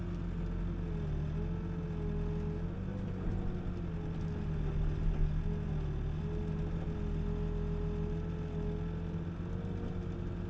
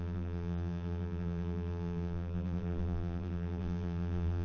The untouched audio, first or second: first